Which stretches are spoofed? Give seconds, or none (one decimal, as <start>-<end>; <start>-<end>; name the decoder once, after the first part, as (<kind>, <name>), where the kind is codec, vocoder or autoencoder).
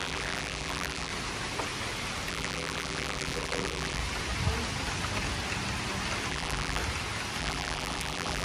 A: 0.0-1.1 (vocoder, BigVGAN v2); 2.3-4.0; 6.3-6.8; 7.4-8.4